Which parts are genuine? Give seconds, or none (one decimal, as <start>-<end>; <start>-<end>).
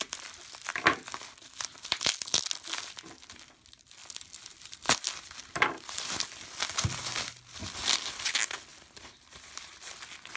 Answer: 0.0-0.7; 1.9-4.0; 7.8-8.7; 10.0-10.4